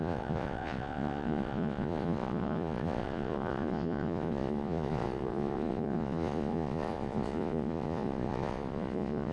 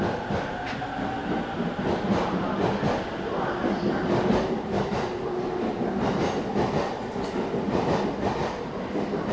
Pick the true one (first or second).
second